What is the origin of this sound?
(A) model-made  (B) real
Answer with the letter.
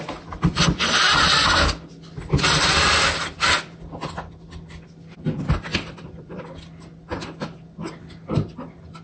B